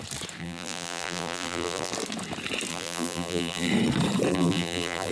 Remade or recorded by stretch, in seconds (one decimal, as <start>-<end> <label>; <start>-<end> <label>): 0.0-0.4 recorded; 0.4-1.9 remade; 1.9-2.7 recorded; 2.7-3.7 remade; 3.7-4.3 recorded; 4.3-5.1 remade